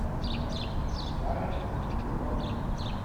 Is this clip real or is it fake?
real